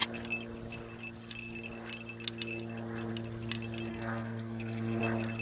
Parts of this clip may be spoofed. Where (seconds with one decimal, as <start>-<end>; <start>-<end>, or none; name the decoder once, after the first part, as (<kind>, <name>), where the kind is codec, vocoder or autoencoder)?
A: 3.9-5.0 (codec, SNAC)